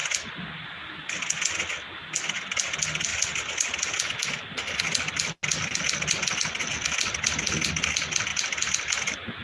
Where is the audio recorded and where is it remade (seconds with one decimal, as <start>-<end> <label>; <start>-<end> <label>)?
0.0-9.4 recorded